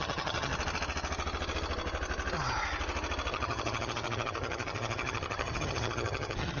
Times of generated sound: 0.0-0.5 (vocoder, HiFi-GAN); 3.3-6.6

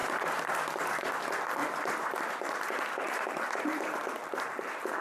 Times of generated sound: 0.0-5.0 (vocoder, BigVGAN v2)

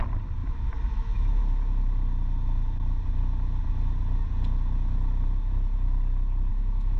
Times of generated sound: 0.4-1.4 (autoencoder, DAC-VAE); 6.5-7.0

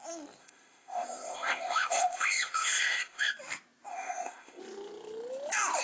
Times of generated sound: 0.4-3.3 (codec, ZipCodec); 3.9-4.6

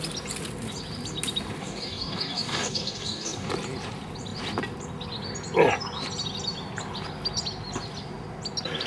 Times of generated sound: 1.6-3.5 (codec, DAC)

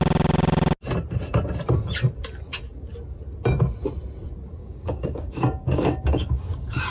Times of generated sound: 4.6-6.9 (codec, DAC)